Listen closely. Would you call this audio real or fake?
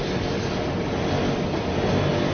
real